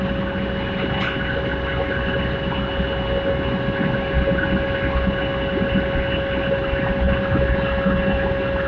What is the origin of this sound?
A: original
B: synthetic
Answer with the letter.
A